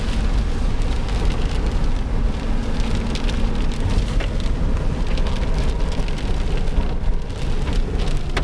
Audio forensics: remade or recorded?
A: recorded